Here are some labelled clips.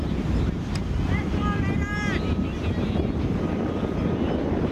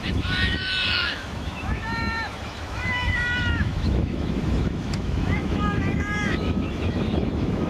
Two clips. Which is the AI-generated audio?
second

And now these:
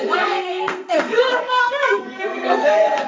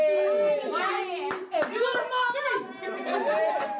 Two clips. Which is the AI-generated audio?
first